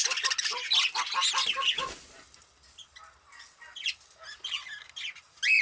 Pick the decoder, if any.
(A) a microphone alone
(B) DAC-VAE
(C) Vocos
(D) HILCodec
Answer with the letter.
A